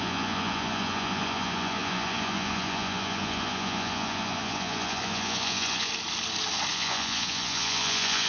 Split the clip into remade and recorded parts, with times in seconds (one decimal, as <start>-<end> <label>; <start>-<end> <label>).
0.0-5.9 remade; 5.9-6.7 recorded; 6.7-8.3 remade